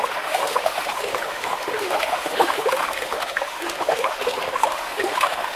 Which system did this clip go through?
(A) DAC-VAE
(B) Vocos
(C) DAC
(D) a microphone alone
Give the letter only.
A